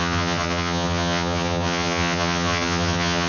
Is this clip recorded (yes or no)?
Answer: no